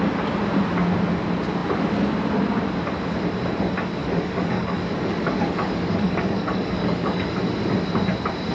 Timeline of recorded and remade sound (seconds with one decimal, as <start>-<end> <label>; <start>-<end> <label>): 0.0-4.0 recorded; 4.0-7.3 remade; 7.3-8.5 recorded